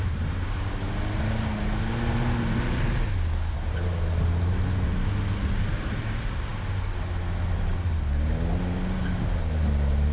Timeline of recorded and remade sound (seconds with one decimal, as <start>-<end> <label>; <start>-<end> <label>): 0.0-10.1 recorded